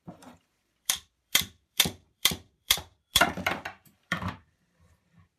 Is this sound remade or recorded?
remade